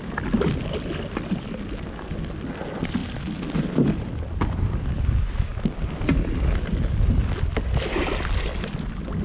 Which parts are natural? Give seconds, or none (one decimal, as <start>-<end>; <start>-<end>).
0.0-9.2